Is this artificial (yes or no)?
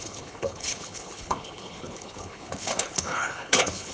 yes